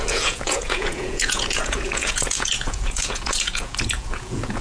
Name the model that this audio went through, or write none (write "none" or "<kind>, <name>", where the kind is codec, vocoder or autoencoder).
vocoder, Vocos